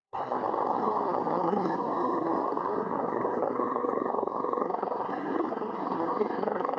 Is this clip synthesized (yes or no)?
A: yes